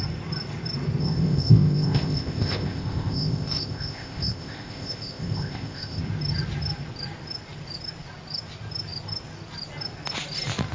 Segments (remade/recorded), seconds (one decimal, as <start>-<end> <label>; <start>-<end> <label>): 0.0-1.0 recorded; 1.0-6.0 remade; 6.0-10.7 recorded